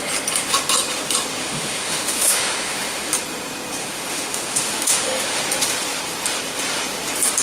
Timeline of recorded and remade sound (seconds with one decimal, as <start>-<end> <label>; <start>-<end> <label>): 0.0-1.4 recorded; 1.4-3.1 remade; 3.1-3.8 recorded; 3.8-5.4 remade; 5.4-7.4 recorded

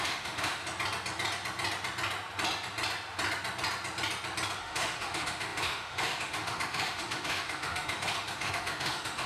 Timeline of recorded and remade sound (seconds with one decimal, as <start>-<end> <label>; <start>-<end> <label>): 0.0-0.6 remade; 0.6-4.6 recorded; 4.6-9.3 remade

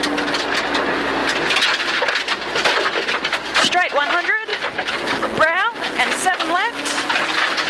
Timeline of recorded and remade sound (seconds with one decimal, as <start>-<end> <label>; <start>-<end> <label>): 0.0-7.7 recorded

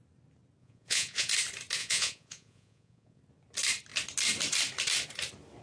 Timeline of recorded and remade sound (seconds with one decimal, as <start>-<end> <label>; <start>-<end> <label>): 0.0-0.6 recorded; 0.6-1.3 remade; 1.3-1.8 recorded; 1.8-3.2 remade; 3.2-5.6 recorded

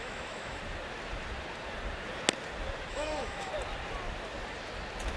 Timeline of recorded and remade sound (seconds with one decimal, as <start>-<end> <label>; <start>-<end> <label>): 0.0-0.6 remade; 0.6-2.9 recorded; 2.9-3.5 remade; 3.5-5.2 recorded

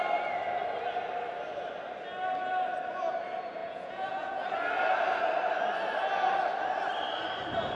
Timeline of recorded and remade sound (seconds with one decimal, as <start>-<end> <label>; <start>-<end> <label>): 0.0-3.6 recorded; 3.6-4.5 remade; 4.5-7.7 recorded